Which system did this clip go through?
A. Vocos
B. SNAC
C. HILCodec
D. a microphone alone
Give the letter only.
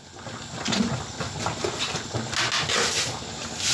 D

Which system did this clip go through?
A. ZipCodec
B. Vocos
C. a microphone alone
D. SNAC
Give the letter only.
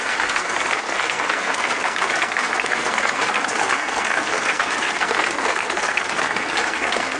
D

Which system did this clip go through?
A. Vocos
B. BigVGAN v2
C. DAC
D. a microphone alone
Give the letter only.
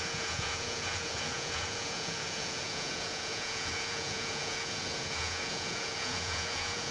A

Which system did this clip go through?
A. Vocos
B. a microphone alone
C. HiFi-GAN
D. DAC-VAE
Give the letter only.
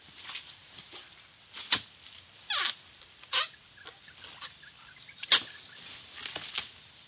B